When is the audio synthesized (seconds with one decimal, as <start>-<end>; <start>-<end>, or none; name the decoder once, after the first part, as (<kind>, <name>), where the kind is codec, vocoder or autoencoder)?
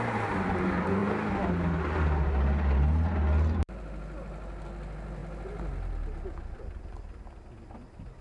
none